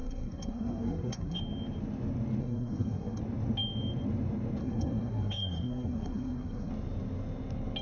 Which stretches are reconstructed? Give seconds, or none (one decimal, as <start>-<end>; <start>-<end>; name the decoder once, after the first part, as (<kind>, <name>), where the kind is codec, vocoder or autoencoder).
0.0-1.4 (codec, SNAC); 2.4-3.2; 4.6-6.7